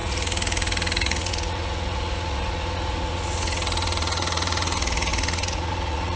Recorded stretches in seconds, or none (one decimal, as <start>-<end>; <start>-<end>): none